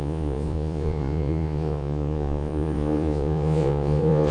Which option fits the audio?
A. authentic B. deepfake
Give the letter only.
B